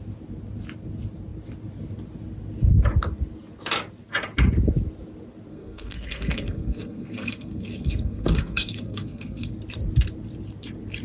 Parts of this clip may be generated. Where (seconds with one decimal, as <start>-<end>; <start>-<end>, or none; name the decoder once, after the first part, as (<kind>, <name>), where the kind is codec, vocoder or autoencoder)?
5.5-9.5 (codec, SNAC)